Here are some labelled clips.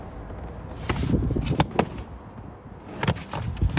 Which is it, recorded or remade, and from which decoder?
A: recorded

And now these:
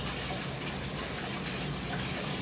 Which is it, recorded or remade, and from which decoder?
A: recorded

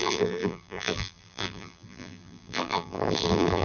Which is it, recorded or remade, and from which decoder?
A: remade, vocoder, BigVGAN v2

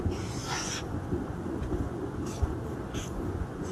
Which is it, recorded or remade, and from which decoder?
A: remade, vocoder, Vocos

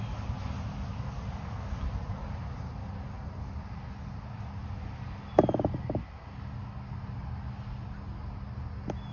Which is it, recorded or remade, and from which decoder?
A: recorded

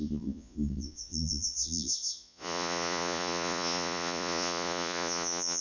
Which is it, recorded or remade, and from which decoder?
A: remade, vocoder, Vocos